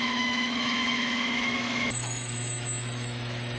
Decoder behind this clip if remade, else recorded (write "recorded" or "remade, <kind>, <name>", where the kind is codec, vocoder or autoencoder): remade, autoencoder, DAC-VAE